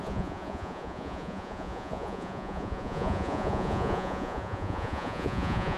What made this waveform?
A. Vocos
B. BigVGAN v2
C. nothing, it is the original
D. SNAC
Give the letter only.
A